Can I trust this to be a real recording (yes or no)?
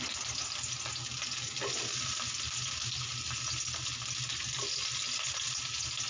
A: yes